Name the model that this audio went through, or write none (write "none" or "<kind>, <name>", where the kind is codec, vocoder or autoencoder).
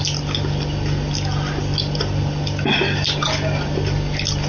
none